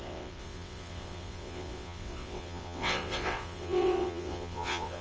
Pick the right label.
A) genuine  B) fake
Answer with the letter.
B